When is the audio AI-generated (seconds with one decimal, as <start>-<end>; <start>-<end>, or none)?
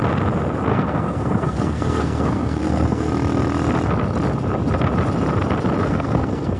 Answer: 0.7-3.1; 5.8-6.6